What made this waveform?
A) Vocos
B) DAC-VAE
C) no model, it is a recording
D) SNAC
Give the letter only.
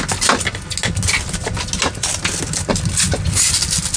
C